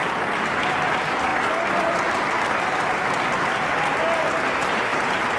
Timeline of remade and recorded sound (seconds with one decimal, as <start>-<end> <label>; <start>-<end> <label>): 0.0-5.4 recorded